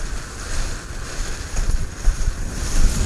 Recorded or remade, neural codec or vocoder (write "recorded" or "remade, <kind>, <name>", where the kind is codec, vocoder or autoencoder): recorded